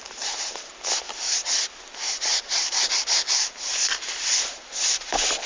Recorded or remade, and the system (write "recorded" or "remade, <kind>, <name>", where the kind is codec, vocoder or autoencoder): remade, vocoder, BigVGAN v2